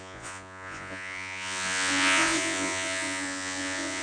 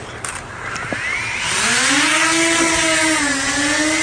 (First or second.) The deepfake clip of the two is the first